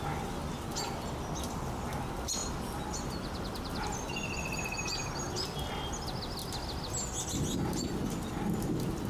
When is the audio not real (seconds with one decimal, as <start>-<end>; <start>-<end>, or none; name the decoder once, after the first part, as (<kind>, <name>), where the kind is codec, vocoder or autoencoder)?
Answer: none